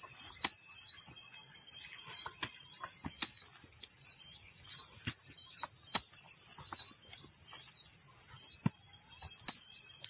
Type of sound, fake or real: real